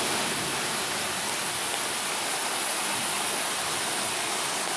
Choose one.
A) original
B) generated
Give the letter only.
A